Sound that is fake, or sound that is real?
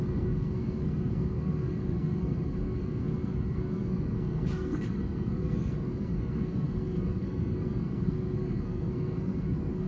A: fake